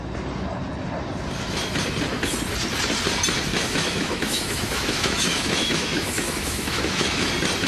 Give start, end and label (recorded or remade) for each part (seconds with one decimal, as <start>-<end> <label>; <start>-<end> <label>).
0.0-3.5 recorded; 3.5-7.3 remade; 7.3-7.7 recorded